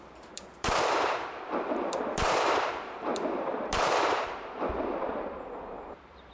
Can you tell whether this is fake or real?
fake